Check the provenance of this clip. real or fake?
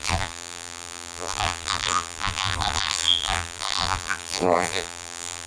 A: fake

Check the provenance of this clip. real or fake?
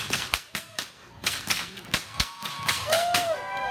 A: fake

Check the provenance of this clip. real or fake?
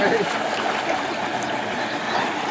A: real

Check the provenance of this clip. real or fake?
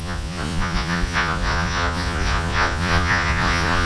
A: fake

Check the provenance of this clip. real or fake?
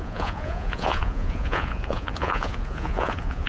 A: fake